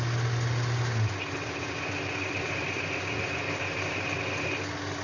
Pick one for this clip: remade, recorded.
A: recorded